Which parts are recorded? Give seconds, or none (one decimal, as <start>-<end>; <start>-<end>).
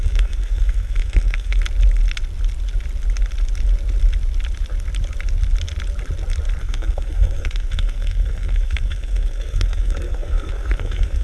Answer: 1.6-6.6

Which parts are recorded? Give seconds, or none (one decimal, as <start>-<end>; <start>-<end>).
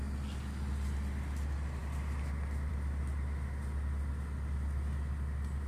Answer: 0.0-5.7